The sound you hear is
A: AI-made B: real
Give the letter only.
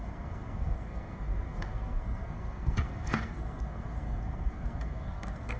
A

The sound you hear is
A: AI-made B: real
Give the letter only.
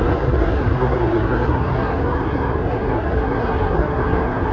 A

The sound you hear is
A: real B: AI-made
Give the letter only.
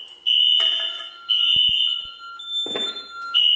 A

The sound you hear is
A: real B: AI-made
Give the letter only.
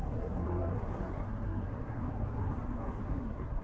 B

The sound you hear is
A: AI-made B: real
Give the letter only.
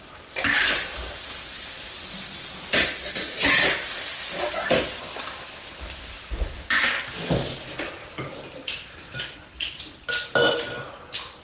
B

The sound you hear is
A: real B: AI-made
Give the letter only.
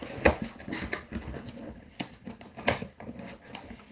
A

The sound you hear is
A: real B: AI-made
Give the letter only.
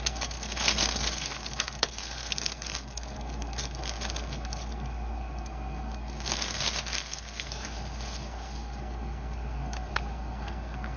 B